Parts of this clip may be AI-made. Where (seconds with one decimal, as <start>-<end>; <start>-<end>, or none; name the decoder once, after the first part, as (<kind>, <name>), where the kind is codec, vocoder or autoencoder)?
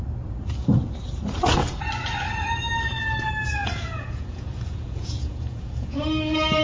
3.6-6.0 (vocoder, Vocos)